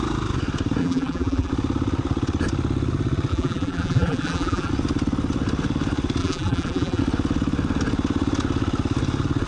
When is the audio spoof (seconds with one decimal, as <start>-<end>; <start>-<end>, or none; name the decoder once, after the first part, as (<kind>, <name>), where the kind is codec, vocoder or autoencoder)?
0.8-1.5 (vocoder, BigVGAN v2); 3.3-4.7; 6.2-7.0